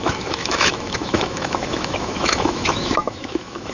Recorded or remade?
remade